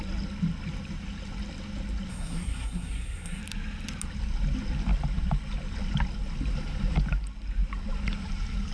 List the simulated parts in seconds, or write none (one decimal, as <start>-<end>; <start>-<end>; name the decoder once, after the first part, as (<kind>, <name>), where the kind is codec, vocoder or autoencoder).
2.1-3.4 (codec, SNAC)